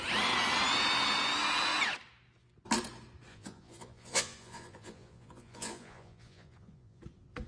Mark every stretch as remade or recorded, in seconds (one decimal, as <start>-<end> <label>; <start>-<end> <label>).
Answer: 0.0-3.3 recorded; 3.3-7.0 remade; 7.0-7.5 recorded